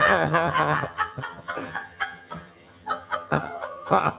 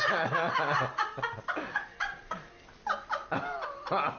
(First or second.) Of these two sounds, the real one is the second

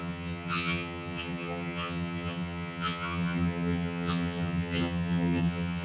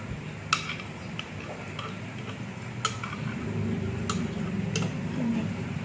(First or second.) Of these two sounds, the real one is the second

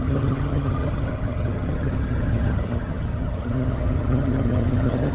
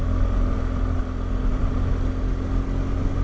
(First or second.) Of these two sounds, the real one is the second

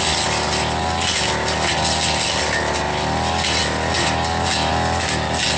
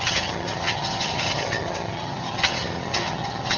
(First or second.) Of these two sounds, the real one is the first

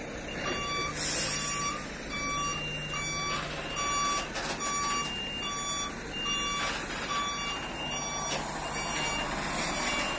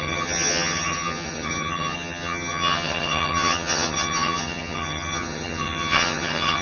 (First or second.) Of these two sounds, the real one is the first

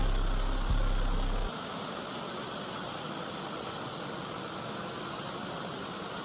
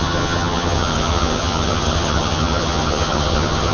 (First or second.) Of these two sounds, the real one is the first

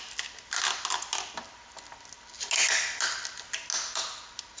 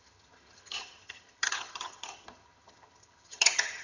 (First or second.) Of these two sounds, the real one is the first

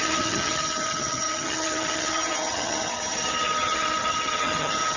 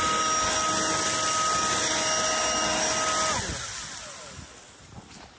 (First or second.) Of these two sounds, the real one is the second